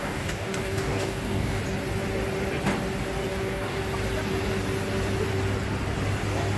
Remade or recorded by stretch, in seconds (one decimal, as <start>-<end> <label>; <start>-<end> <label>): 0.0-1.6 remade; 1.6-3.3 recorded; 3.3-3.8 remade; 3.8-6.6 recorded